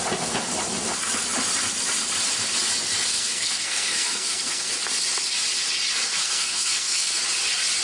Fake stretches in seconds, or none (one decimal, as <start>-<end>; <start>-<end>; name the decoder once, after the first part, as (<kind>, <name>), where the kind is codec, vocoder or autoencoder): 3.1-4.7 (codec, SNAC); 6.1-7.2